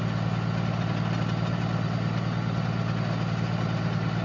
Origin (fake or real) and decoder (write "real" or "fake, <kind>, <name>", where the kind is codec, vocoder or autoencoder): real